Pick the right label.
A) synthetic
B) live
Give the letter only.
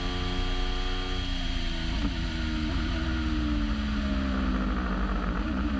B